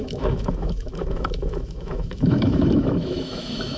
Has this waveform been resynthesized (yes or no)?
yes